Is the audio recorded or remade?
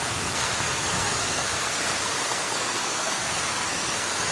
remade